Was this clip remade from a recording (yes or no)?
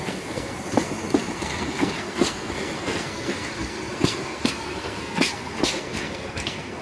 yes